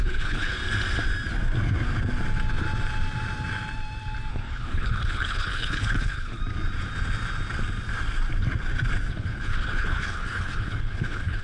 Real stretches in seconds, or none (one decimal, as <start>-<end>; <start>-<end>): 0.6-4.3; 6.4-9.1